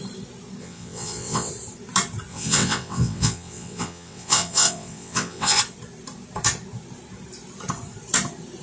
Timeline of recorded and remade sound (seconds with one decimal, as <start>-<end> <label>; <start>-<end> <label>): 0.0-0.6 recorded; 0.6-1.5 remade; 1.5-2.3 recorded; 2.3-5.6 remade; 5.6-8.6 recorded